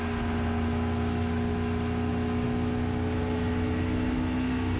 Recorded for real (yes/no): yes